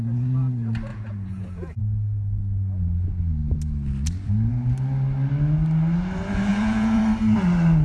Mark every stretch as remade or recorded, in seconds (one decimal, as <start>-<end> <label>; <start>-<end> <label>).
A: 0.0-0.9 recorded; 0.9-1.8 remade; 1.8-6.5 recorded; 6.5-7.0 remade; 7.0-7.8 recorded